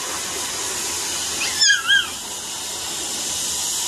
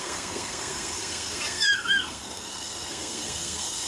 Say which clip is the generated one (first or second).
second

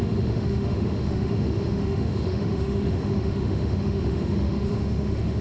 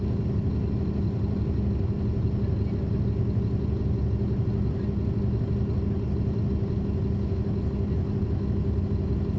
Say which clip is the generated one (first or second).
first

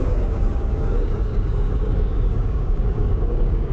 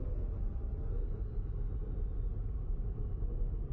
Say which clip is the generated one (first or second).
first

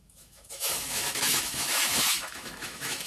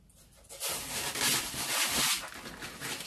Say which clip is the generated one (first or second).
first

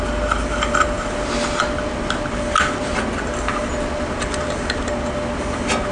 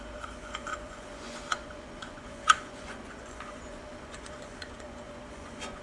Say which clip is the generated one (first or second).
second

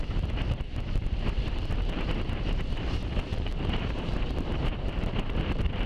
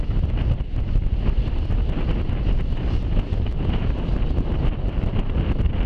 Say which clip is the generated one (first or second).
first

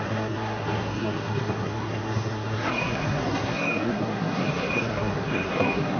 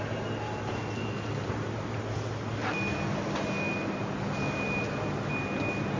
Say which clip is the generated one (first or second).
first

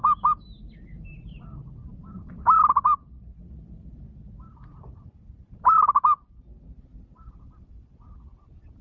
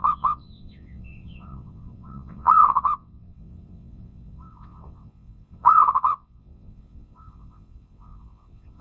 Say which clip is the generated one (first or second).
second